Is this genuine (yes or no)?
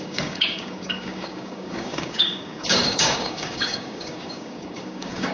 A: no